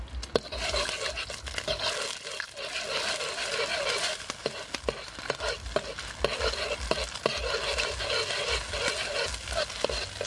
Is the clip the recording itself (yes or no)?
yes